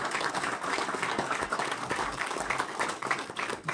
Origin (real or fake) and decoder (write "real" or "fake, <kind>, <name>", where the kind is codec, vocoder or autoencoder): fake, codec, DAC